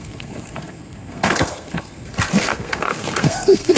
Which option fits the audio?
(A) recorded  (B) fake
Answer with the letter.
B